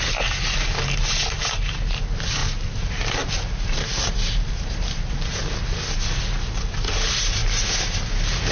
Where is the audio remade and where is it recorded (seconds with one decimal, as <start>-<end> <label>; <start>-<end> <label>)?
0.0-2.4 recorded; 2.4-5.1 remade; 5.1-8.5 recorded